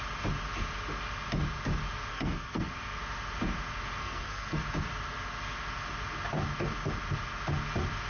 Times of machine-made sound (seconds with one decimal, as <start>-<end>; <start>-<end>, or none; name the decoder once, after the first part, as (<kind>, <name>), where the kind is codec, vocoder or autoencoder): 2.1-2.7 (codec, SNAC); 4.0-4.6